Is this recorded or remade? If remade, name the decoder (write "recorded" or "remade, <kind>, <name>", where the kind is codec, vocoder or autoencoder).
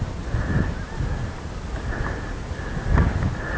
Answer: recorded